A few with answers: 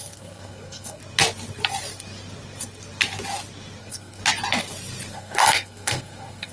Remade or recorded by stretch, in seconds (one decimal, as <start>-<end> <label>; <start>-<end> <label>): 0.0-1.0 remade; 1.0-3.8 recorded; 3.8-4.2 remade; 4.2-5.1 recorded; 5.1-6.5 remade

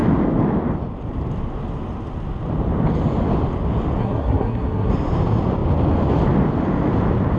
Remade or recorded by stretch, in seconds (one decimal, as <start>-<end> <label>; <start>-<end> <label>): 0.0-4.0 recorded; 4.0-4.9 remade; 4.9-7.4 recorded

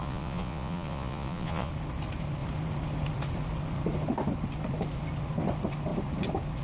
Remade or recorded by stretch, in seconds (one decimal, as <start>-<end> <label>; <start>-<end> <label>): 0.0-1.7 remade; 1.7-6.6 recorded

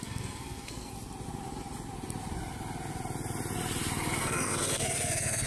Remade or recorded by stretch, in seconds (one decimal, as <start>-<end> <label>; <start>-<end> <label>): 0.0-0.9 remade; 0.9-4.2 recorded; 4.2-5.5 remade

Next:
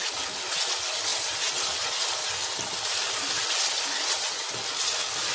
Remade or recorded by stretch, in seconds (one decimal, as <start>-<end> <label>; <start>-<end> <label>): 0.0-5.3 recorded

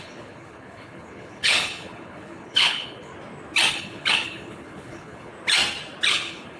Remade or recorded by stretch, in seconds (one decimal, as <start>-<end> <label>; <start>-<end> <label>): 0.0-3.1 remade; 3.1-3.7 recorded; 3.7-5.3 remade; 5.3-6.1 recorded; 6.1-6.6 remade

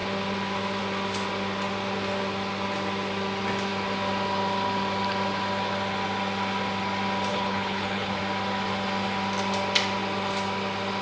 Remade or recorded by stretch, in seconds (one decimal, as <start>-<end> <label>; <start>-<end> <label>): 0.0-7.3 recorded; 7.3-8.2 remade; 8.2-11.0 recorded

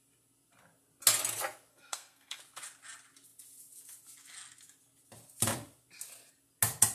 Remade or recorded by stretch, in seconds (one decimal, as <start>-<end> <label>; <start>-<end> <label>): 0.0-1.7 recorded; 1.7-2.4 remade; 2.4-6.9 recorded